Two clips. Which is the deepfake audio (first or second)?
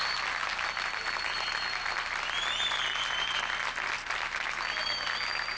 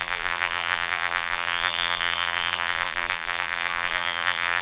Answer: second